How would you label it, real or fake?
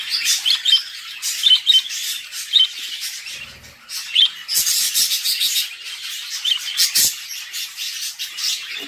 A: real